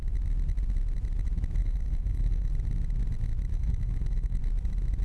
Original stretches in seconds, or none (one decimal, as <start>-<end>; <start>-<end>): 0.0-1.6; 2.5-3.5; 4.4-5.0